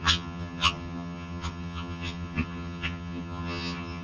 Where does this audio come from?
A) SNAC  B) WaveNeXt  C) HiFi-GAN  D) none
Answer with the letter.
C